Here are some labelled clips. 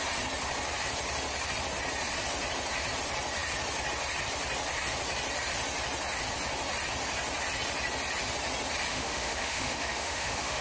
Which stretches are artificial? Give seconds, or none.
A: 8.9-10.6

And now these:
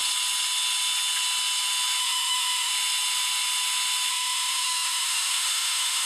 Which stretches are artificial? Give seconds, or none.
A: 2.0-2.7; 4.1-6.1

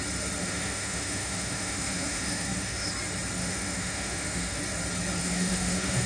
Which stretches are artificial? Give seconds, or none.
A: 0.4-2.9; 3.4-4.6; 5.2-6.1

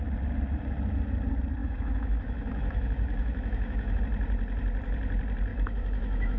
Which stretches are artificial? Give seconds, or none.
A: 1.6-4.0; 5.5-6.4

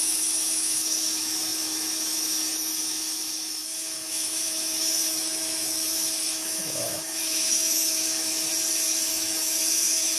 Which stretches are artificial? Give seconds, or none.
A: 0.0-8.5; 9.1-10.2

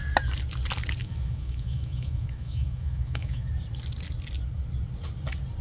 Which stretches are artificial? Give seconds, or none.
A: 1.0-3.5